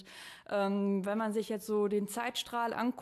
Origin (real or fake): real